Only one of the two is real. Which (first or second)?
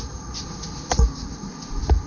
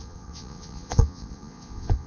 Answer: first